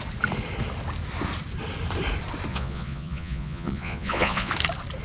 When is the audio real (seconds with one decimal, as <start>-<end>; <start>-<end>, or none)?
0.0-2.5; 4.5-5.0